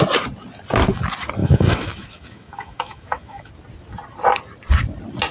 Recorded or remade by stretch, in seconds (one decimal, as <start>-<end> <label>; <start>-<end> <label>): 0.0-1.4 recorded; 1.4-3.5 remade; 3.5-5.3 recorded